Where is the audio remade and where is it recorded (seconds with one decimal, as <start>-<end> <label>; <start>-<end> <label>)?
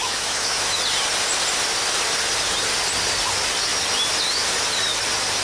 0.0-0.8 remade; 0.8-5.4 recorded